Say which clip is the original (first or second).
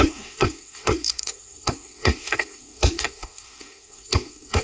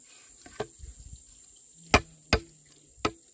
second